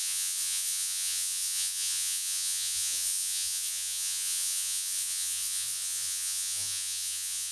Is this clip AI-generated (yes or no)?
yes